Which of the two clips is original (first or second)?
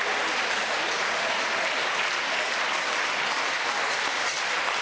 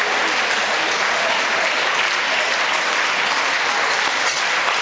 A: second